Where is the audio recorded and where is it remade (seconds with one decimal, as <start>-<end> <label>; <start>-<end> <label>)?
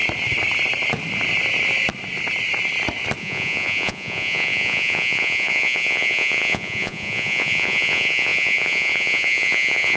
0.0-3.2 recorded; 3.2-10.0 remade